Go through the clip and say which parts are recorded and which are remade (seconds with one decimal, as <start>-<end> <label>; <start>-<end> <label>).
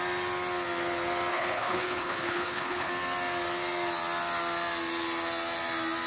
0.0-1.3 recorded; 1.3-2.9 remade; 2.9-6.1 recorded